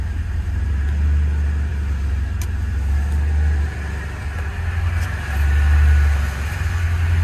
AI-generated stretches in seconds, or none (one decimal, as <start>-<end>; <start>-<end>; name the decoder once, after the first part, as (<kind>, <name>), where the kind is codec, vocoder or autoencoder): 0.0-0.7 (vocoder, BigVGAN v2)